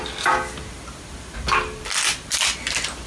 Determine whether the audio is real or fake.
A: real